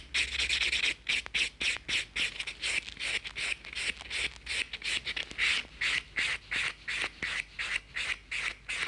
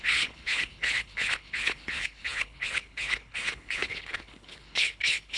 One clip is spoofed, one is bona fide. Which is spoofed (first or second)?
second